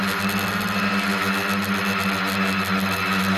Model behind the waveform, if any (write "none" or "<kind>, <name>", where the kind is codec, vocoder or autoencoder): none